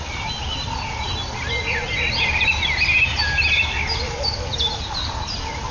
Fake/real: real